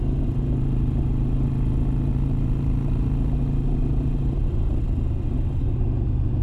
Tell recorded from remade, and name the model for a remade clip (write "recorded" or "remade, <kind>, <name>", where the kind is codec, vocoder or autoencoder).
recorded